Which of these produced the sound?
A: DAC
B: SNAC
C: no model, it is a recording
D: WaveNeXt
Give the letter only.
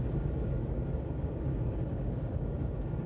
A